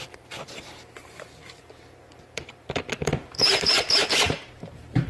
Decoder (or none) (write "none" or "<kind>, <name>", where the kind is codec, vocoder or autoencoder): vocoder, BigVGAN v2